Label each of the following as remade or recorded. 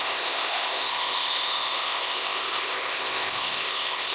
remade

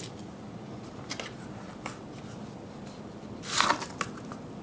recorded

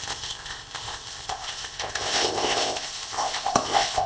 remade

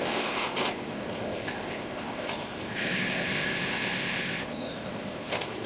remade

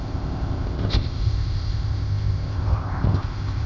remade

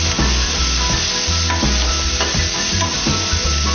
recorded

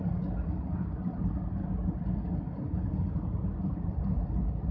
recorded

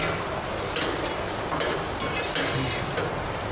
recorded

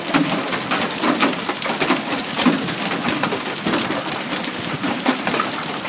recorded